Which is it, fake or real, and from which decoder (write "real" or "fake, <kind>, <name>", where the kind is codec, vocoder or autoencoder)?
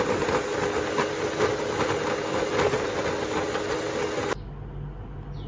real